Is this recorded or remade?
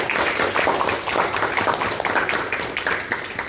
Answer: recorded